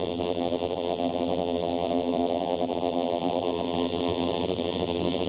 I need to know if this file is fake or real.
fake